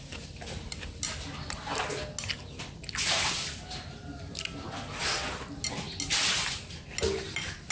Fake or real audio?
real